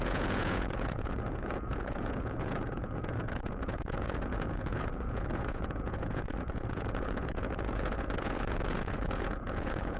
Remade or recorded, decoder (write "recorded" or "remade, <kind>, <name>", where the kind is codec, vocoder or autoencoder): remade, vocoder, Vocos